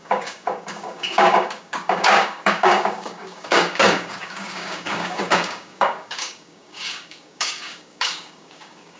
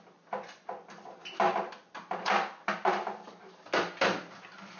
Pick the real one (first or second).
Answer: second